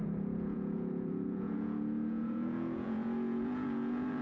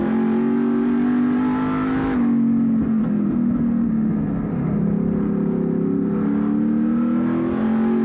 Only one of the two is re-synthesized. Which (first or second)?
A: first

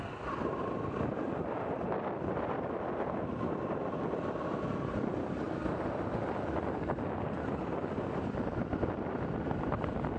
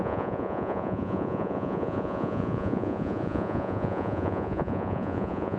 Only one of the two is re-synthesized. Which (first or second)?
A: second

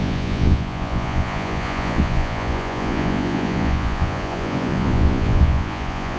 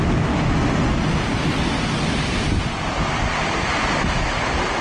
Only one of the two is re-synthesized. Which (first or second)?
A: first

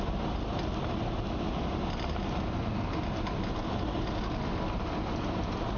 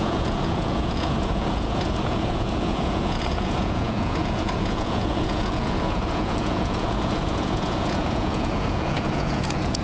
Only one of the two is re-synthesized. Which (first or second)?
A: second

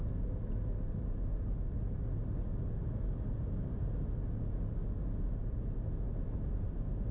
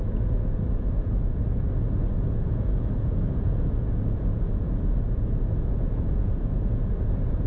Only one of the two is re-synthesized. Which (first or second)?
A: second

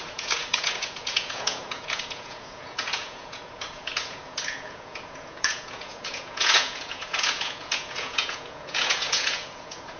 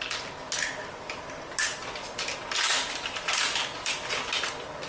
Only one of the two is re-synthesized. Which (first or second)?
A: first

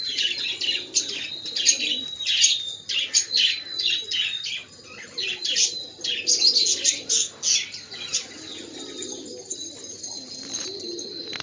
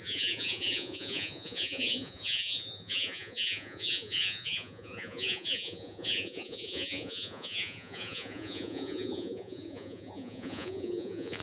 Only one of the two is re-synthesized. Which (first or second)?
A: second